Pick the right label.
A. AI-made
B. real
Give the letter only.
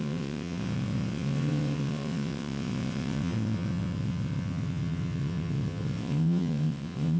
A